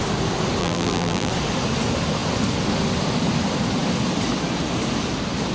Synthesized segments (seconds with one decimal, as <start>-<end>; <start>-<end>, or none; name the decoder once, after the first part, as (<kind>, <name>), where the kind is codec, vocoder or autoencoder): 0.6-1.3 (vocoder, BigVGAN v2)